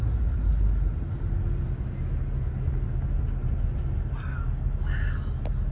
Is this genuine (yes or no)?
yes